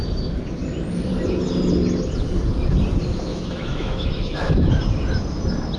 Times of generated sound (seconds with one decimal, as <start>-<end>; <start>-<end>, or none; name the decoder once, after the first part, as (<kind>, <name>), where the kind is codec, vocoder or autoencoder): 3.3-4.7 (autoencoder, DAC-VAE)